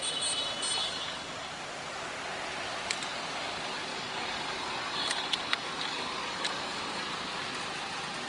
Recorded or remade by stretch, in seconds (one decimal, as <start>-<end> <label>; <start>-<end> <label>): 0.0-0.8 recorded; 0.8-1.5 remade; 1.5-3.9 recorded; 3.9-7.0 remade; 7.0-8.3 recorded